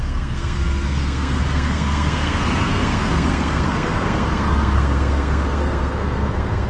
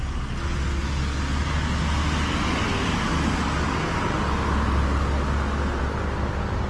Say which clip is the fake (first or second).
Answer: first